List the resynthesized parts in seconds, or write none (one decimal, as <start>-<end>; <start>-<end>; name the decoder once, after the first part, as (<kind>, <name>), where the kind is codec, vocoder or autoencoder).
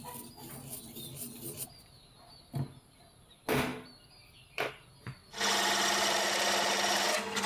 3.7-4.7 (vocoder, BigVGAN v2); 5.2-7.1